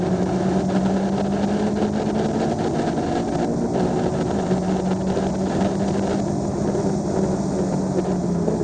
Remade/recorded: recorded